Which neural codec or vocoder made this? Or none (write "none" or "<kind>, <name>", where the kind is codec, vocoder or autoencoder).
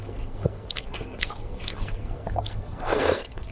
codec, SNAC